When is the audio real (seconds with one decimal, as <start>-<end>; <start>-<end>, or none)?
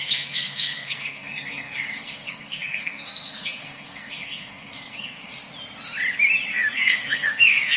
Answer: 5.3-6.5